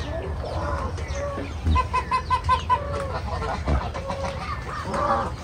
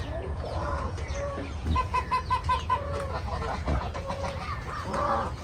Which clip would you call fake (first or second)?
second